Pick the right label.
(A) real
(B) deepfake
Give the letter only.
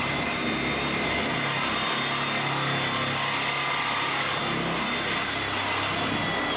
A